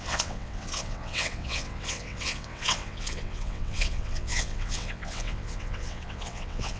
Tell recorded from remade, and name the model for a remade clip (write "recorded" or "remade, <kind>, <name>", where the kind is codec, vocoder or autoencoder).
remade, vocoder, WaveNeXt